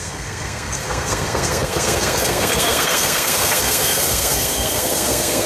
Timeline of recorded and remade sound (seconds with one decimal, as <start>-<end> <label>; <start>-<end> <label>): 0.0-5.5 remade

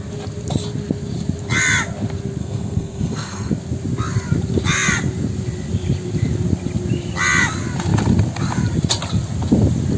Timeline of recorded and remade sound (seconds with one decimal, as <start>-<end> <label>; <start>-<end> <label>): 0.0-2.4 recorded; 2.4-3.5 remade; 3.5-10.0 recorded

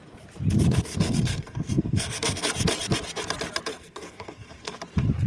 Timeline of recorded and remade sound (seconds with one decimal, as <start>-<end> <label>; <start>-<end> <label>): 0.0-0.9 recorded; 0.9-2.4 remade; 2.4-3.7 recorded; 3.7-4.8 remade; 4.8-5.3 recorded

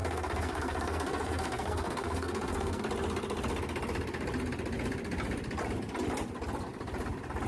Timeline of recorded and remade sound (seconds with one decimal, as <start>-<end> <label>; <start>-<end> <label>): 0.0-2.8 remade; 2.8-7.5 recorded

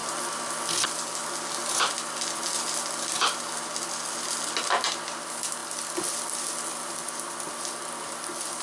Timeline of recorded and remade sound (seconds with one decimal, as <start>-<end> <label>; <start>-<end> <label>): 0.0-8.6 recorded